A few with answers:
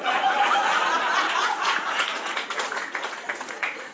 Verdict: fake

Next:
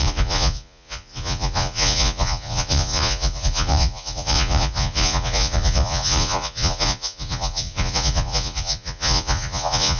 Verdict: fake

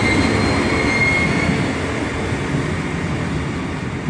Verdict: real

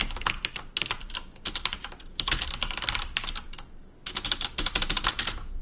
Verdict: real